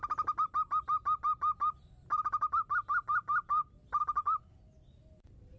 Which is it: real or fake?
real